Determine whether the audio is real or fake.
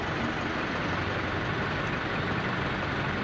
real